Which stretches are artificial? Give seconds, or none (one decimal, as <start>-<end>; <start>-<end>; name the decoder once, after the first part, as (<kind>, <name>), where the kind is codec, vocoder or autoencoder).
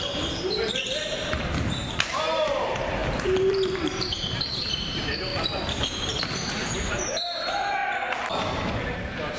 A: 0.0-7.8 (vocoder, BigVGAN v2); 8.3-9.4